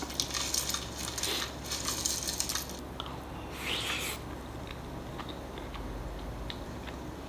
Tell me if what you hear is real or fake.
real